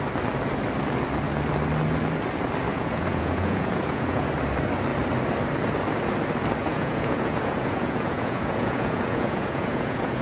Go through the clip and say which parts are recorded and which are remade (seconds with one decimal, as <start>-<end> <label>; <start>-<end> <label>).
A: 0.0-2.7 recorded; 2.7-4.3 remade; 4.3-6.6 recorded; 6.6-10.2 remade